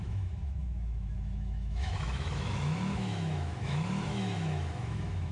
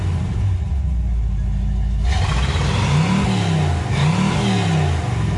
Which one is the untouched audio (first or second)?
second